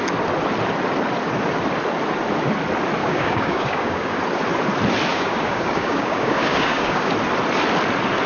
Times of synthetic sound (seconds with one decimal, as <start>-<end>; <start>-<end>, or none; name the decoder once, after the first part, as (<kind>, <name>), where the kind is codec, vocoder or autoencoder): 3.0-4.2 (codec, DAC); 5.1-7.1